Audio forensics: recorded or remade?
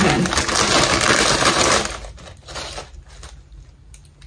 recorded